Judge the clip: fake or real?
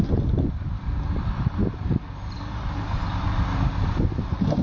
fake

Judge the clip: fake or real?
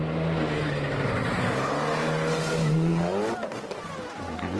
real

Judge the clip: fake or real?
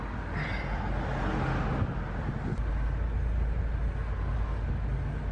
real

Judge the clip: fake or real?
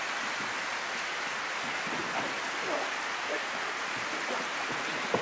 real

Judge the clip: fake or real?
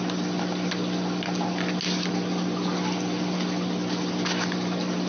real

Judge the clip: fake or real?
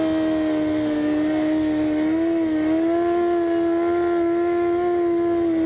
real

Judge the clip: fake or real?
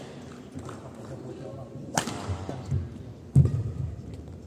real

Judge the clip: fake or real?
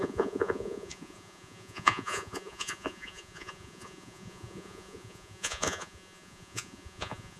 fake